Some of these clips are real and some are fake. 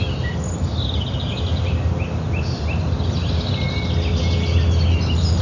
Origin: real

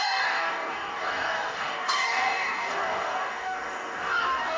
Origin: fake